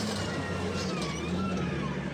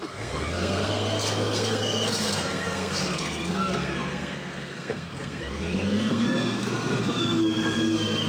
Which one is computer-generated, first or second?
second